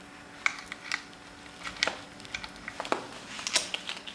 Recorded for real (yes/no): yes